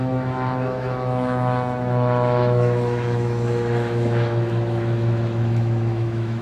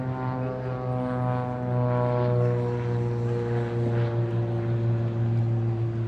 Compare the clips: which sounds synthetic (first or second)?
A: first